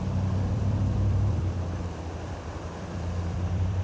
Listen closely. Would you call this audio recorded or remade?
remade